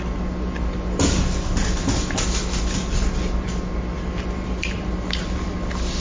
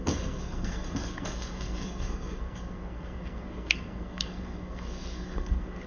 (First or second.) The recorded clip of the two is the first